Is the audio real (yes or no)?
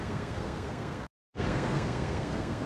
no